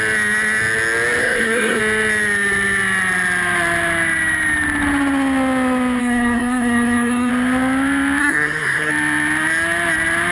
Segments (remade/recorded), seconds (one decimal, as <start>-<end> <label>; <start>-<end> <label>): 0.0-1.2 recorded; 1.2-1.8 remade; 1.8-6.0 recorded; 6.0-7.3 remade; 7.3-8.2 recorded; 8.2-8.9 remade; 8.9-10.3 recorded